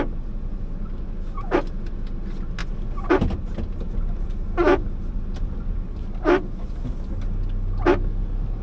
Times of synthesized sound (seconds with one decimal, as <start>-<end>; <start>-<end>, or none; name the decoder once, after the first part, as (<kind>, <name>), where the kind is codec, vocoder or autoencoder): none